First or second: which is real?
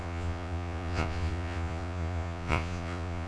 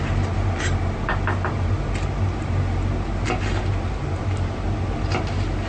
second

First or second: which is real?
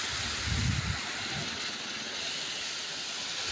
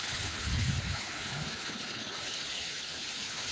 first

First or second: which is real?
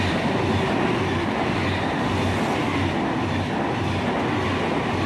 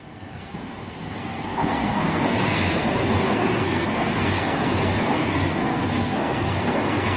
first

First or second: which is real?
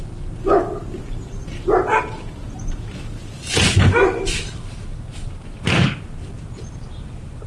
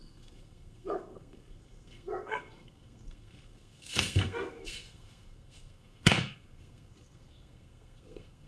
first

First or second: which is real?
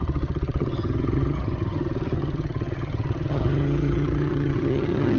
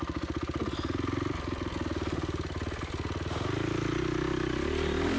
second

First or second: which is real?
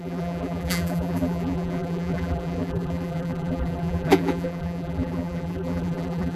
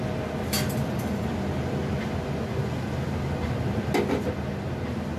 second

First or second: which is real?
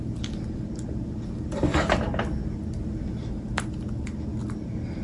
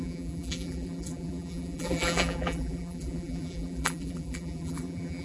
first